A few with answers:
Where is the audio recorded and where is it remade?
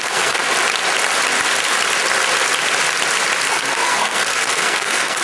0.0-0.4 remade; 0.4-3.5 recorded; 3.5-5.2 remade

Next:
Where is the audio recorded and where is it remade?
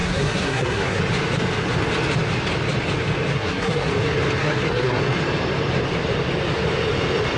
0.0-1.0 remade; 1.0-3.3 recorded; 3.3-3.9 remade; 3.9-4.4 recorded; 4.4-5.0 remade; 5.0-7.4 recorded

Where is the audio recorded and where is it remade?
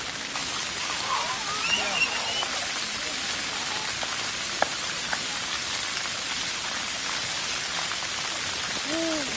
0.0-9.4 recorded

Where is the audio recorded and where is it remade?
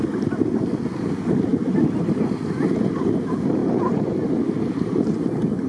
0.0-1.5 recorded; 1.5-2.1 remade; 2.1-3.6 recorded; 3.6-5.3 remade; 5.3-5.7 recorded